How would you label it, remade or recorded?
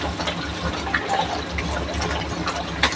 recorded